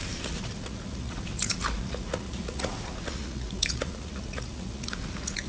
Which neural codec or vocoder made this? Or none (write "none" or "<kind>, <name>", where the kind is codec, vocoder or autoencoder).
vocoder, Vocos